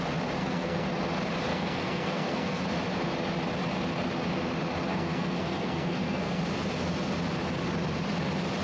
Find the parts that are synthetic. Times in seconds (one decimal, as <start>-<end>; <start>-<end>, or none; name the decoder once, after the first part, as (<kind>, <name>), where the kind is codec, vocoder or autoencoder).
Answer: 0.4-0.9 (codec, SNAC); 1.5-2.6; 4.9-6.4